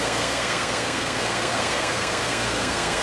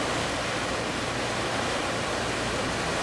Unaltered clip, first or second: second